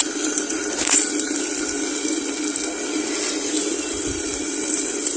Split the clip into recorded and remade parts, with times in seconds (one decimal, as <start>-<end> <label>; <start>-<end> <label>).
0.0-0.8 remade; 0.8-3.9 recorded; 3.9-5.2 remade